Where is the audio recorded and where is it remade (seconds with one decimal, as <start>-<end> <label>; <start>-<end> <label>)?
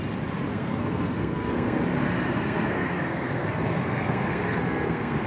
0.0-0.5 recorded; 0.5-1.8 remade; 1.8-2.3 recorded; 2.3-5.3 remade